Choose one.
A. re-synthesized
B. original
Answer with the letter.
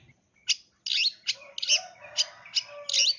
B